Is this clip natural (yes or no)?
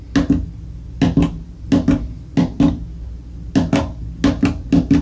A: yes